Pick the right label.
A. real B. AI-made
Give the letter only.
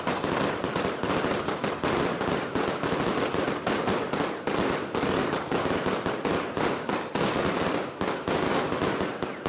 A